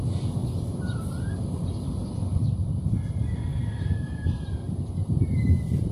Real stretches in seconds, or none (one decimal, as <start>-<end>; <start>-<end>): 0.0-0.4; 1.3-3.5; 4.1-5.0